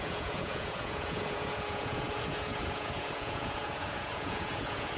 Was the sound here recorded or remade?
remade